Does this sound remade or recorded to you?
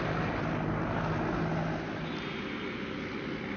recorded